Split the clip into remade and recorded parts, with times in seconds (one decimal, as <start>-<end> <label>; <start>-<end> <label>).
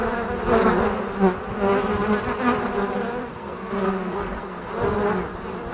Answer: 0.0-3.3 recorded; 3.3-4.7 remade; 4.7-5.7 recorded